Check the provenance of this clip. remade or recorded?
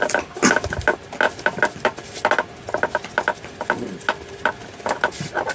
recorded